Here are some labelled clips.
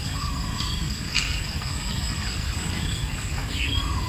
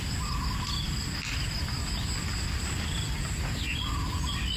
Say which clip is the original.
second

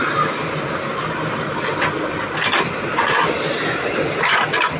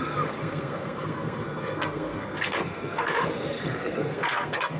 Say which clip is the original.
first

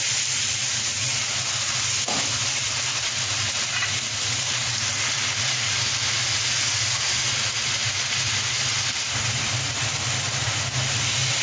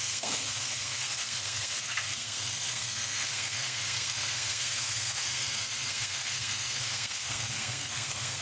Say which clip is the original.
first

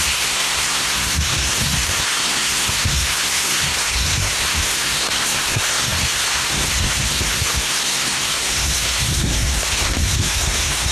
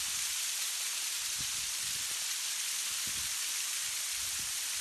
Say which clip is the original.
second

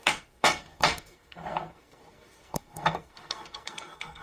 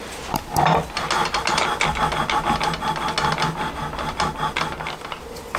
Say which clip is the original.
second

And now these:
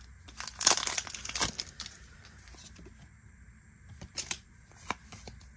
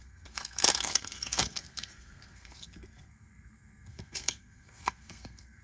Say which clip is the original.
first